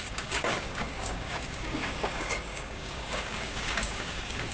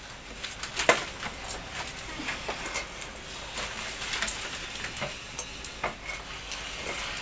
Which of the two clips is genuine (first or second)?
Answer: second